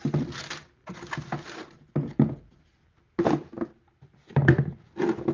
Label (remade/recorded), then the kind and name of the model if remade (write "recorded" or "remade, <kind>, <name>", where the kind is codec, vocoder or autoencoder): recorded